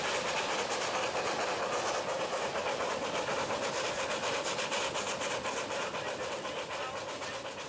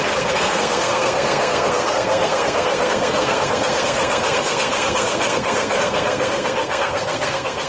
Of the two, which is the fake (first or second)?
second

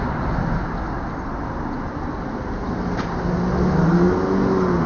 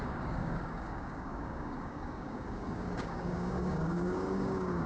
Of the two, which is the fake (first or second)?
second